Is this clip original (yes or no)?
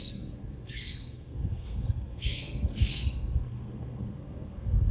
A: no